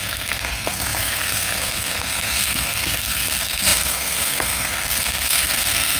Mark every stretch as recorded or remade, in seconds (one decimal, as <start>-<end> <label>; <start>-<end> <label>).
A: 0.0-6.0 remade